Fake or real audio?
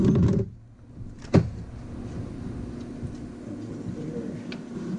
real